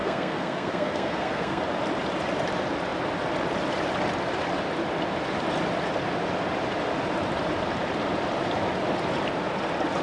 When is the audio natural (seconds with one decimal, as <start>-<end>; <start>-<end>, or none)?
1.6-10.0